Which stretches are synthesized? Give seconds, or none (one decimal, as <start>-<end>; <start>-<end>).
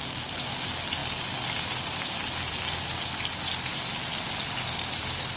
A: none